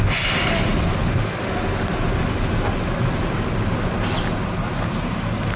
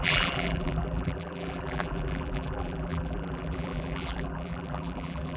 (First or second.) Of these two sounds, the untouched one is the first